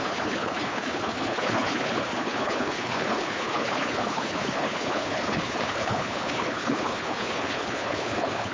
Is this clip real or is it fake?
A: fake